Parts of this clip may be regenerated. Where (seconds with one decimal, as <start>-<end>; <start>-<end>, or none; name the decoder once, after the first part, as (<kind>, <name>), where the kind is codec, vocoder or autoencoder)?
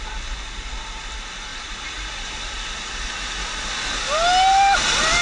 1.5-2.6 (vocoder, BigVGAN v2)